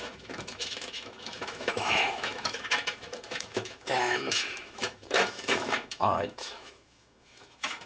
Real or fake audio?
fake